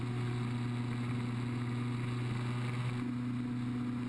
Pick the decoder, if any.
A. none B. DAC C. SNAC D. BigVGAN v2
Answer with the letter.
A